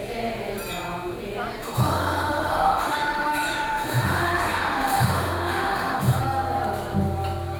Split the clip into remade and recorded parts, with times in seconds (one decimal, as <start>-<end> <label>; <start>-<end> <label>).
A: 0.0-1.6 recorded; 1.6-6.2 remade; 6.2-7.6 recorded